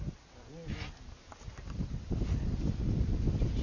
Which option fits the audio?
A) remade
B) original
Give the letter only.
B